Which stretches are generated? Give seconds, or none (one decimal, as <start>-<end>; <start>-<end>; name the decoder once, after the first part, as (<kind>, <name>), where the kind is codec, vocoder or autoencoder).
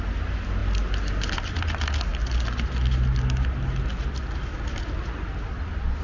none